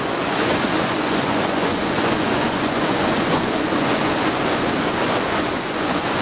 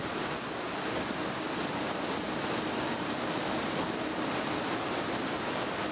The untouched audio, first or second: second